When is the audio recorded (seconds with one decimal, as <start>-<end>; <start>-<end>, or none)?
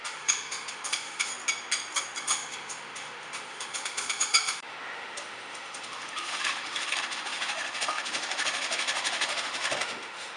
1.3-2.2